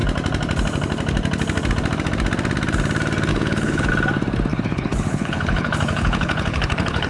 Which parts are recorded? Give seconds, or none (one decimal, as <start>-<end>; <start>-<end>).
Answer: 0.0-3.3; 3.9-4.5